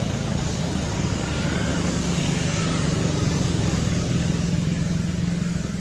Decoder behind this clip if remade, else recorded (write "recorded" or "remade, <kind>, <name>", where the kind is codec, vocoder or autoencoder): remade, codec, DAC